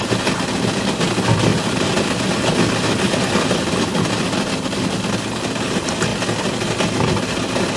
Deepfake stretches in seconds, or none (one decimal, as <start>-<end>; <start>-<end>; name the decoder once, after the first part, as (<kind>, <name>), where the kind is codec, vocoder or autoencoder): 1.5-4.1 (vocoder, BigVGAN v2)